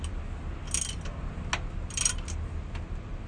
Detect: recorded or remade recorded